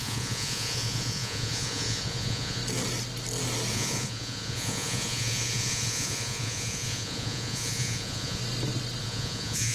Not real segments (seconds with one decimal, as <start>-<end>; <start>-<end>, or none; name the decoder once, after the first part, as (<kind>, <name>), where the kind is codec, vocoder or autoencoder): 0.0-2.6 (vocoder, Vocos); 3.7-8.4; 9.0-9.7